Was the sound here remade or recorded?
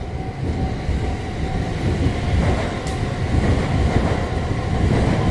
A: recorded